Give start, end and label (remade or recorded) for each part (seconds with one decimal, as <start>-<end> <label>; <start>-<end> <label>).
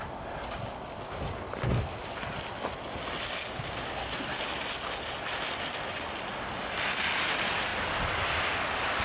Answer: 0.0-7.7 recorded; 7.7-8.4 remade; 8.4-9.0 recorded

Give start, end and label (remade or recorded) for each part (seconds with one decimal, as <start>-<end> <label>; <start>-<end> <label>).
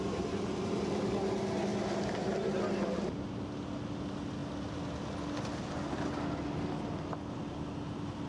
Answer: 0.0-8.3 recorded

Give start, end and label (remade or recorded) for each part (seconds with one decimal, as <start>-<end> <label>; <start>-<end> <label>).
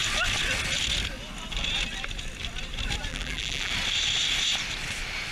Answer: 0.0-3.1 recorded; 3.1-3.7 remade; 3.7-5.3 recorded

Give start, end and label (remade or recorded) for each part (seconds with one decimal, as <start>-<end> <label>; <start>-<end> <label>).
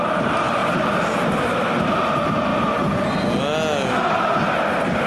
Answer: 0.0-0.6 recorded; 0.6-1.3 remade; 1.3-5.1 recorded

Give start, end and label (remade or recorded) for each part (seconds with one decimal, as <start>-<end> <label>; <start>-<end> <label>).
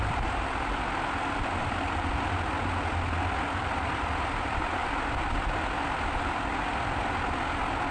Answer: 0.0-7.9 remade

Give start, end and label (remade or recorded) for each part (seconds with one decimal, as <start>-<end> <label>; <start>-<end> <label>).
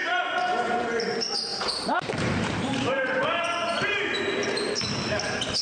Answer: 0.0-0.6 remade; 0.6-1.5 recorded; 1.5-4.9 remade; 4.9-5.6 recorded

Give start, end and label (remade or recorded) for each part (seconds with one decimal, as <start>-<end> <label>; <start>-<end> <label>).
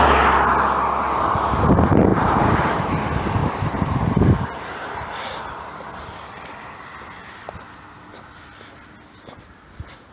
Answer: 0.0-2.1 recorded; 2.1-2.9 remade; 2.9-3.4 recorded; 3.4-5.3 remade; 5.3-10.1 recorded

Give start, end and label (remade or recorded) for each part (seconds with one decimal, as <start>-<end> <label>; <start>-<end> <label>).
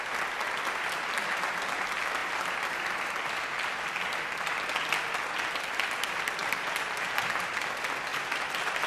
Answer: 0.0-6.4 recorded; 6.4-7.5 remade; 7.5-8.1 recorded; 8.1-8.9 remade